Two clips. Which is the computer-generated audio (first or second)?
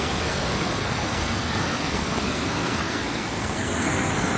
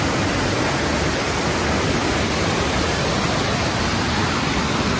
first